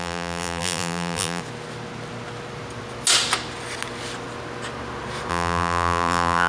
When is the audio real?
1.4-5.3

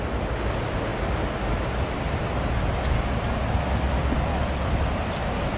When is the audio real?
0.0-5.6

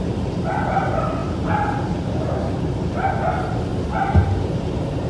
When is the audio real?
0.0-1.2; 3.1-3.7

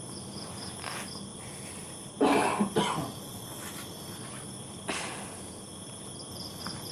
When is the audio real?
0.0-6.9

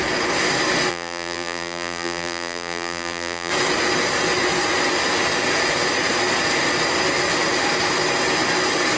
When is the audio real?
0.0-0.9; 3.5-9.0